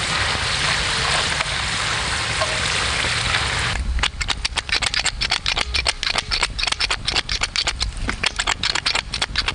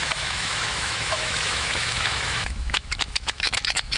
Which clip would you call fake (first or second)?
second